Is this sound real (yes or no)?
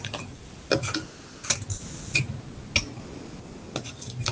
yes